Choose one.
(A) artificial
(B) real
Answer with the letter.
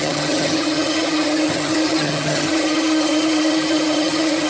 A